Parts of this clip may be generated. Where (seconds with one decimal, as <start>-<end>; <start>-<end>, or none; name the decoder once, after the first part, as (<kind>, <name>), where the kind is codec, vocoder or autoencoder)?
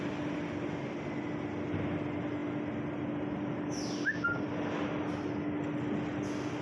none